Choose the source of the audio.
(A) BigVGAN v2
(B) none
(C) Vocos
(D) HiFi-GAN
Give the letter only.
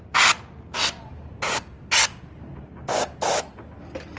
B